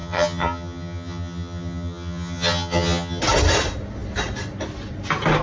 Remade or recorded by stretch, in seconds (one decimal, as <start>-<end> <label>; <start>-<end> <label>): 0.0-3.2 remade; 3.2-5.4 recorded